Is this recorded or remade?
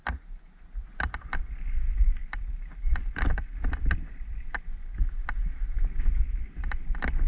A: recorded